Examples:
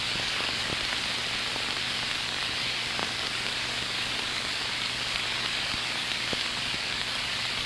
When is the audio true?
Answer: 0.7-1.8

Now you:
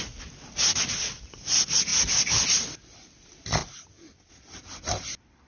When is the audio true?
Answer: 0.0-5.5

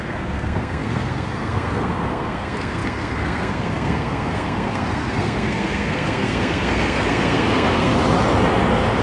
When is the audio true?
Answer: 7.9-9.0

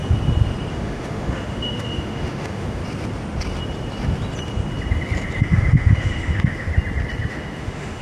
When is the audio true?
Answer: 0.0-0.7; 2.8-5.4; 6.7-7.3

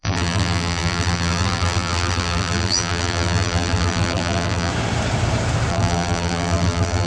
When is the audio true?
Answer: 4.7-5.7

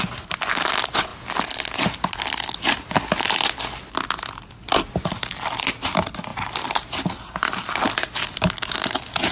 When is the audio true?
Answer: 0.0-9.3

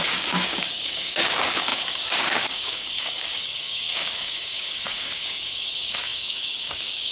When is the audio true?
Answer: none

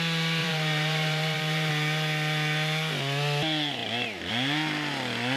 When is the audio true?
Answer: 0.0-0.4; 1.7-5.4